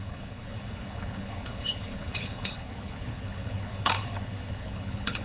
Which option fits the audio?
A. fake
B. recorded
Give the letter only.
A